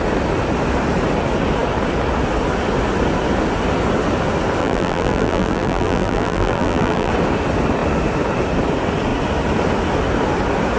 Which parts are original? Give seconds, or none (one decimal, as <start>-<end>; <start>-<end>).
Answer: 0.0-4.6; 7.1-10.8